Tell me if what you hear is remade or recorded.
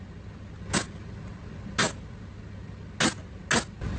recorded